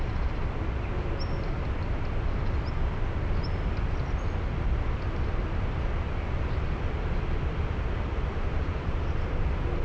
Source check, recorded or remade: recorded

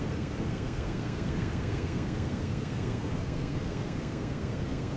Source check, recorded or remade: remade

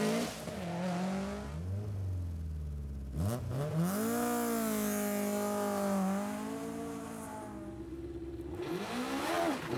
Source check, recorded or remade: recorded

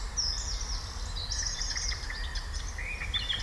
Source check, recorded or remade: recorded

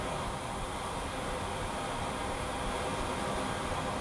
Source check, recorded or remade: recorded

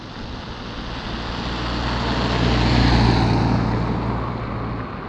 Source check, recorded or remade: recorded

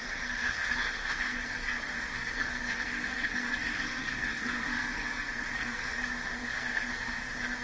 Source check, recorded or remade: remade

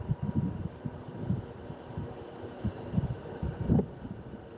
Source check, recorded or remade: recorded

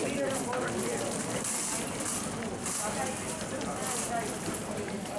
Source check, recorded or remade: recorded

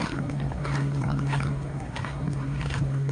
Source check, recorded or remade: remade